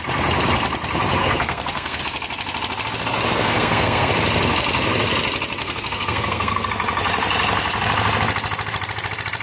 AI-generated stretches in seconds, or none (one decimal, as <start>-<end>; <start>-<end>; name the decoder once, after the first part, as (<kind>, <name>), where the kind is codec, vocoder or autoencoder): 1.2-2.0 (codec, SNAC); 3.4-4.1; 5.6-6.7